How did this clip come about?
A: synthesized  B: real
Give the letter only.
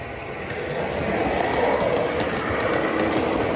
B